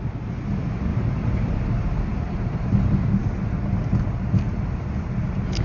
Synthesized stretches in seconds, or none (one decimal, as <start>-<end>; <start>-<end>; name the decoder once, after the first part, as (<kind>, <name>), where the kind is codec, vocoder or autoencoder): 0.9-1.6 (vocoder, BigVGAN v2); 2.1-2.7